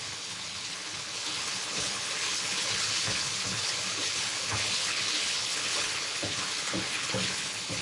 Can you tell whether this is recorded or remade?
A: remade